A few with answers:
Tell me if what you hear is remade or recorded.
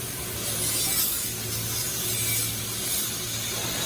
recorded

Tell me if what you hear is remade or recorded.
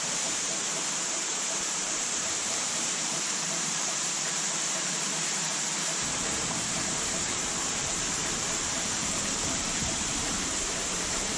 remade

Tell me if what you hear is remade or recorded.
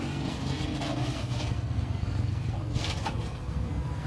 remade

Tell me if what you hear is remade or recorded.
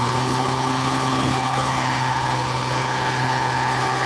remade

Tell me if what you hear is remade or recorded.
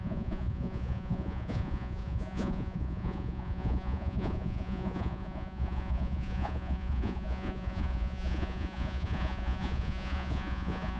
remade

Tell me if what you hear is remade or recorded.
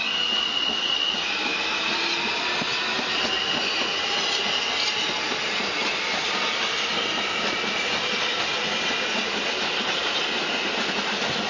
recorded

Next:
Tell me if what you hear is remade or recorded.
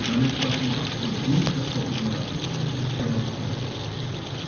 recorded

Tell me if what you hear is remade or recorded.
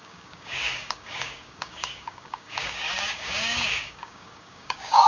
remade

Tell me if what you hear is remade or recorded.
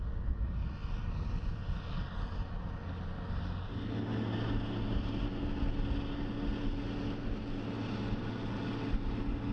recorded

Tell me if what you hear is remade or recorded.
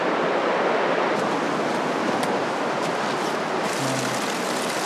recorded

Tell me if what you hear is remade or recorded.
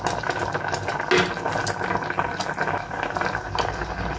recorded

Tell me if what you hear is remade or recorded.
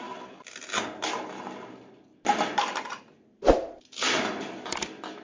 recorded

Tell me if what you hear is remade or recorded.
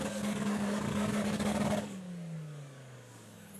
remade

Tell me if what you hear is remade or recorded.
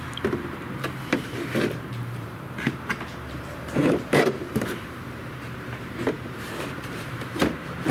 remade